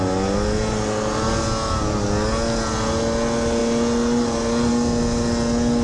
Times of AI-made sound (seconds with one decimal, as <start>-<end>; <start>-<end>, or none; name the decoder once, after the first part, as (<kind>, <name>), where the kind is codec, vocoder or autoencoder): none